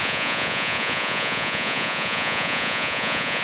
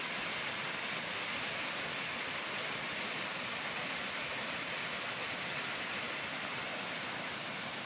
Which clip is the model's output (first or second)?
first